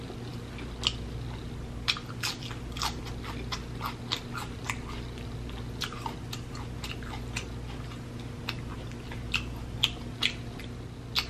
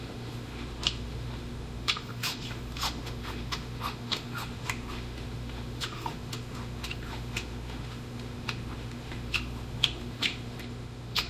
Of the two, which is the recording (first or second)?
first